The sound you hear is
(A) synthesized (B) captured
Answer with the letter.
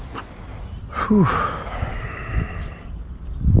B